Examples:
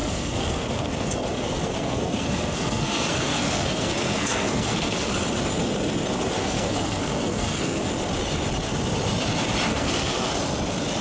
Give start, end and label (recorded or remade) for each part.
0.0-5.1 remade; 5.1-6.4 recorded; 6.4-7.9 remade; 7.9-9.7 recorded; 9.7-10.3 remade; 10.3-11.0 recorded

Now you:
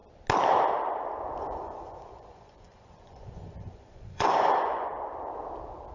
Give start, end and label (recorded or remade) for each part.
0.0-1.4 recorded; 1.4-4.9 remade; 4.9-5.9 recorded

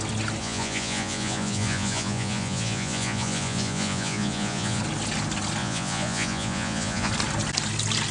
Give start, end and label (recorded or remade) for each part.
0.0-0.4 recorded; 0.4-4.8 remade; 4.8-5.6 recorded; 5.6-7.1 remade; 7.1-8.1 recorded

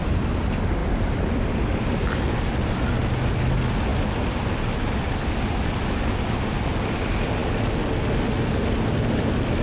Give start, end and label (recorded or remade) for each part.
0.0-9.6 recorded